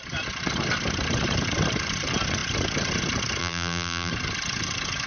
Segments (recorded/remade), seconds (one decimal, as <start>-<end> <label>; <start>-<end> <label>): 0.0-3.4 recorded; 3.4-4.1 remade; 4.1-5.1 recorded